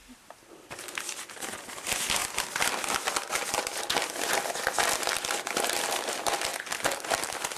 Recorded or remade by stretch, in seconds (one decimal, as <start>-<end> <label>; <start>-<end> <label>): 0.0-7.6 recorded